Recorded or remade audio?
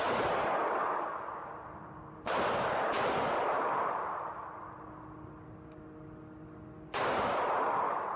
recorded